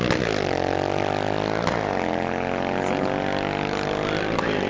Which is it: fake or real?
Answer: real